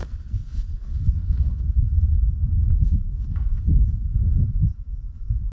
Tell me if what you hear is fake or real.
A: fake